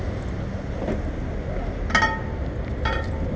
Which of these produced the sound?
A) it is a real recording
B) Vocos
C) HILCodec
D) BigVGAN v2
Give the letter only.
A